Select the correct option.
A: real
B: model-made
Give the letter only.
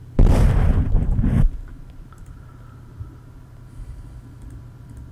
B